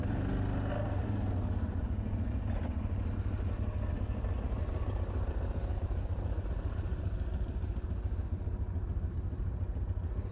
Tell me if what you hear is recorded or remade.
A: recorded